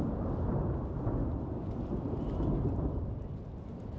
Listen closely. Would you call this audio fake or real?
real